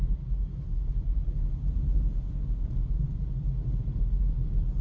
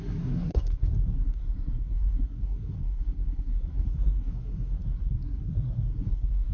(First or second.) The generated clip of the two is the second